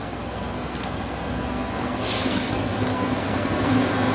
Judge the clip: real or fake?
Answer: fake